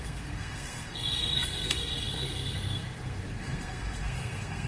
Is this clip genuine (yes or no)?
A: no